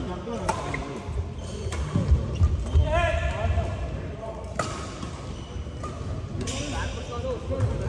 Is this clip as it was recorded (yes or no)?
yes